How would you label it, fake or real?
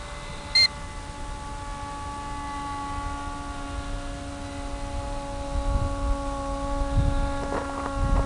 real